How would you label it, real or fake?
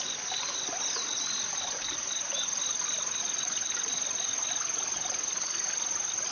real